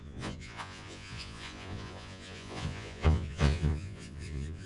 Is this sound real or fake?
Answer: fake